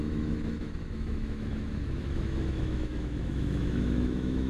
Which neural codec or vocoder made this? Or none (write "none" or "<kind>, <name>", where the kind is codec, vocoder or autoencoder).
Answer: autoencoder, DAC-VAE